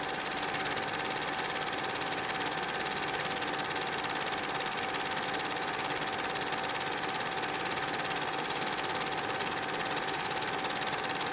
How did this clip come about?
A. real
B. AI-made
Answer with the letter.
A